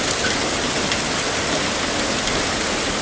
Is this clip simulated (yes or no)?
no